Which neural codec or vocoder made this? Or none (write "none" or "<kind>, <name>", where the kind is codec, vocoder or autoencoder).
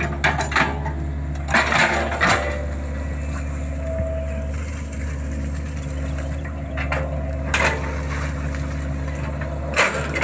none